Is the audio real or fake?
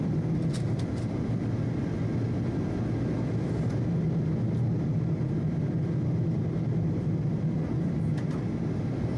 real